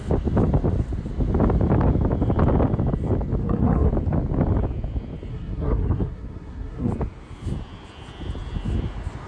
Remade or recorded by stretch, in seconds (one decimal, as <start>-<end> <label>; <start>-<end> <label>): 0.0-3.4 recorded; 3.4-3.9 remade; 3.9-5.3 recorded; 5.3-6.9 remade; 6.9-9.3 recorded